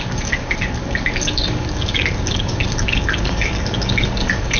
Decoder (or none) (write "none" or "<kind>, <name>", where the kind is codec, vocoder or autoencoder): codec, DAC